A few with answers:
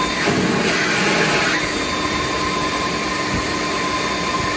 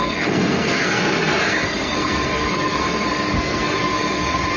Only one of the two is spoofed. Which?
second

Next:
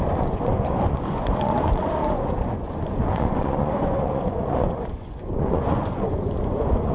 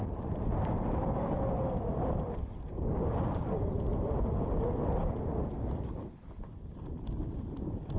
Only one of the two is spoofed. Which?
first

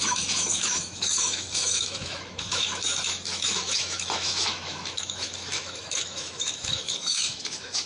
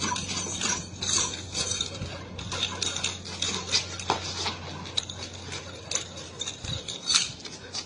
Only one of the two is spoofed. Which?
first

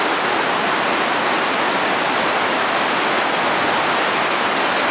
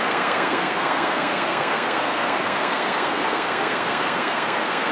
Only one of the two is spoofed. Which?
second